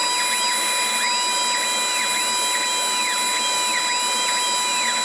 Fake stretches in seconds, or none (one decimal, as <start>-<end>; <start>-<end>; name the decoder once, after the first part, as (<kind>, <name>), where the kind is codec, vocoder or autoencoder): none